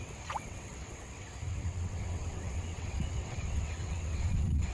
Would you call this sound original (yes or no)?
no